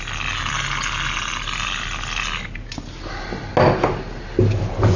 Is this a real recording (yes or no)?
yes